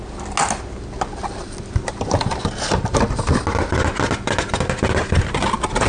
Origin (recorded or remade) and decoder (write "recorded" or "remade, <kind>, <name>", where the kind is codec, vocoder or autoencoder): recorded